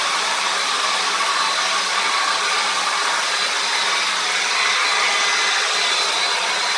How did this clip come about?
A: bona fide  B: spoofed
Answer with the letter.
A